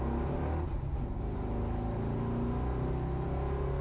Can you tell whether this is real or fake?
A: real